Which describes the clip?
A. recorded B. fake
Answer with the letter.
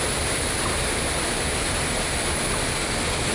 A